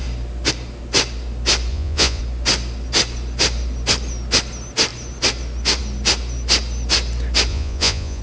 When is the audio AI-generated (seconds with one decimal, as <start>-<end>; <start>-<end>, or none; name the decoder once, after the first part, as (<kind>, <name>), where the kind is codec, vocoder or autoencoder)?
1.7-2.2 (vocoder, Vocos); 7.5-8.2